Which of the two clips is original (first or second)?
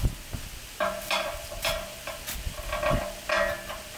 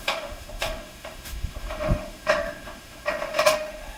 first